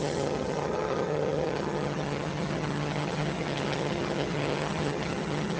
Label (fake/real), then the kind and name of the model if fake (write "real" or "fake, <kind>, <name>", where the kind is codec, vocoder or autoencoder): fake, vocoder, HiFi-GAN